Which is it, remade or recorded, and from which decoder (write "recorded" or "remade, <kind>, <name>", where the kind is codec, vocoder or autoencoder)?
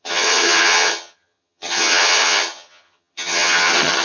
remade, vocoder, HiFi-GAN